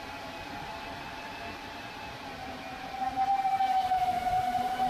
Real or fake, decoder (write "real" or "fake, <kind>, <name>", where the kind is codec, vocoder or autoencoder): fake, vocoder, BigVGAN v2